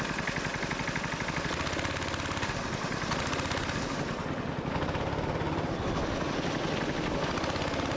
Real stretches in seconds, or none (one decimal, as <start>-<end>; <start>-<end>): 0.0-8.0